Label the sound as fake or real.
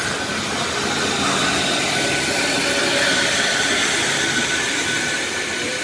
real